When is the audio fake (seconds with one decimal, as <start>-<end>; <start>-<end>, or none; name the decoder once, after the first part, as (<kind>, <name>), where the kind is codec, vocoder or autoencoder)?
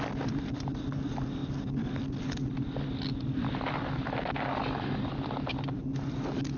none